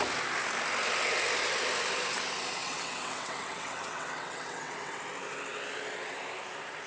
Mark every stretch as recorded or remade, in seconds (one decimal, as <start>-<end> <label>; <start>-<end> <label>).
0.0-2.6 recorded; 2.6-5.0 remade; 5.0-6.9 recorded